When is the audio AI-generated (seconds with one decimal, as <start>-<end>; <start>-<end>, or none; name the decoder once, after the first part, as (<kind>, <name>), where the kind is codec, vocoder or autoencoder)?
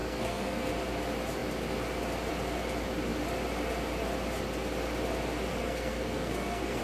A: 0.0-0.7 (codec, SNAC); 5.5-6.8